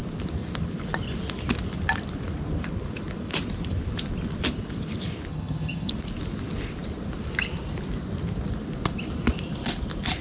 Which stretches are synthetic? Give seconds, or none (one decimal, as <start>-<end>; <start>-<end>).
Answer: 5.3-5.9